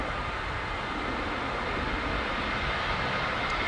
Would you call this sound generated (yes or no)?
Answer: no